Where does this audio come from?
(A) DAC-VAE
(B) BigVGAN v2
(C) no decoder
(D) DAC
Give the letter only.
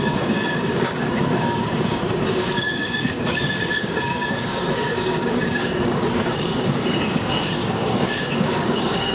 D